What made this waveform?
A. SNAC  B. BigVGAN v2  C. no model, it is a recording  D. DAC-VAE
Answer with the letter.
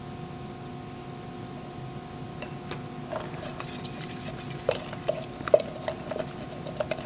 C